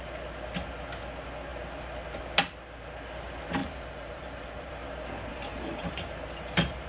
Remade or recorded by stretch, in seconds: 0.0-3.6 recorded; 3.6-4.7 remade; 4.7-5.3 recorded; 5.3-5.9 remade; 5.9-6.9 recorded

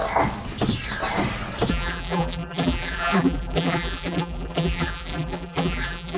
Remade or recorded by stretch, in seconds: 0.0-1.7 recorded; 1.7-6.2 remade

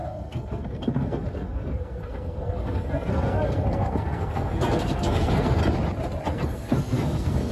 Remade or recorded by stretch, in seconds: 0.0-5.6 remade; 5.6-6.3 recorded; 6.3-7.5 remade

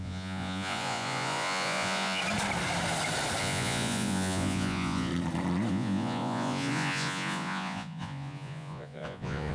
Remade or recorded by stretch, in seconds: 0.0-2.2 remade; 2.2-3.4 recorded; 3.4-5.1 remade; 5.1-5.7 recorded; 5.7-9.5 remade

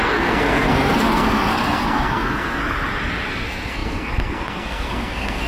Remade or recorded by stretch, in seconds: 0.0-2.6 remade; 2.6-3.3 recorded; 3.3-5.5 remade

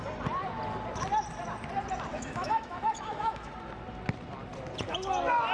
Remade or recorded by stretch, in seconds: 0.0-2.1 recorded; 2.1-3.5 remade; 3.5-5.5 recorded

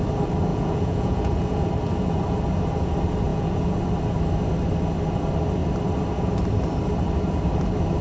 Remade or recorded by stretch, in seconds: 0.0-0.5 recorded; 0.5-1.7 remade; 1.7-3.3 recorded; 3.3-3.8 remade; 3.8-8.0 recorded